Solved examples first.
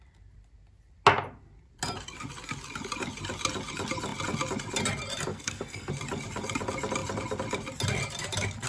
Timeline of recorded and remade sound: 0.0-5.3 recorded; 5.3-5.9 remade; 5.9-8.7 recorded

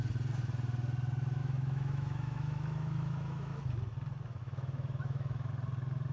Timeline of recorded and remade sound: 0.0-1.4 recorded; 1.4-3.6 remade; 3.6-4.4 recorded; 4.4-5.5 remade; 5.5-6.1 recorded

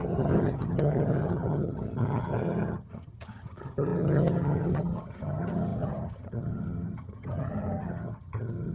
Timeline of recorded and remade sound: 0.0-8.7 remade

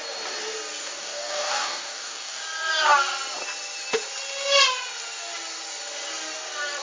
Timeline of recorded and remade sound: 0.0-0.8 recorded; 0.8-2.4 remade; 2.4-6.8 recorded

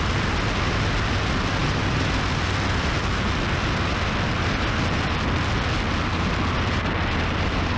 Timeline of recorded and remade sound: 0.0-7.8 recorded

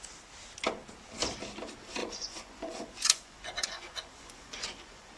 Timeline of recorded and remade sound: 0.0-2.0 recorded; 2.0-5.2 remade

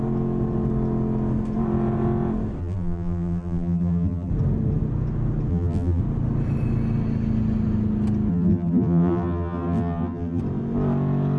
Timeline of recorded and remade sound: 0.0-2.6 recorded; 2.6-4.3 remade; 4.3-5.5 recorded; 5.5-6.0 remade; 6.0-8.3 recorded; 8.3-10.4 remade; 10.4-11.4 recorded

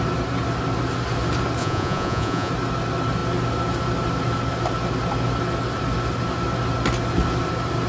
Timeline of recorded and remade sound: 0.0-1.6 recorded; 1.6-2.5 remade; 2.5-7.9 recorded